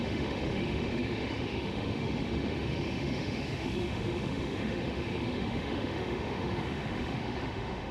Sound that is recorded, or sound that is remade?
remade